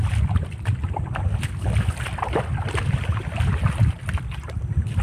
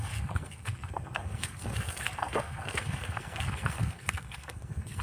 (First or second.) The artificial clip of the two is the second